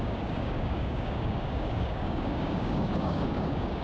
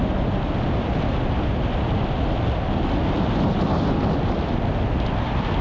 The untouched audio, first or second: second